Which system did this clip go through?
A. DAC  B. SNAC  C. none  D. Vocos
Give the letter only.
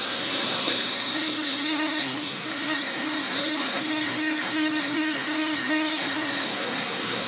B